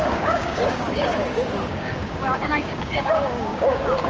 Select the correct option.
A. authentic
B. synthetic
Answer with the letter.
B